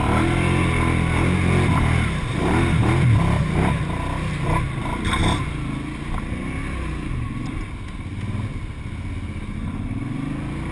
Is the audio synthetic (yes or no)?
no